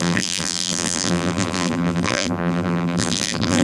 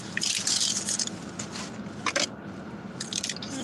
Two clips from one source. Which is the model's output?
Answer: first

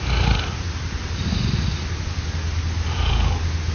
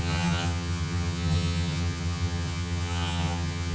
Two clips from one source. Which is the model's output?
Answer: second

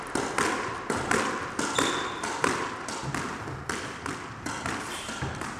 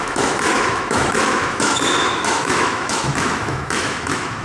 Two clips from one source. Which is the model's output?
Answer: second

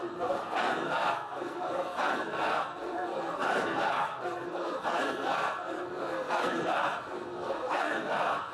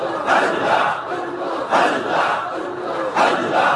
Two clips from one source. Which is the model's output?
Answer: first